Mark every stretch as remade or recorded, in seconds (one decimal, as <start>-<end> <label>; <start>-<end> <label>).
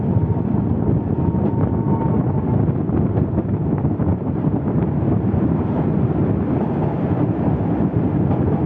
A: 0.0-4.1 recorded; 4.1-6.3 remade; 6.3-8.7 recorded